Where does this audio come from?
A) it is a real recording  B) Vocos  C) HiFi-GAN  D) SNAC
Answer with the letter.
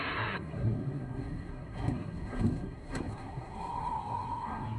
D